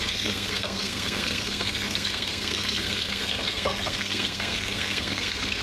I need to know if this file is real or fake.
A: fake